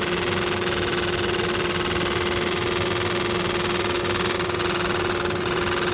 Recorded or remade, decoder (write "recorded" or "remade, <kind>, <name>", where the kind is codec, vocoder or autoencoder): recorded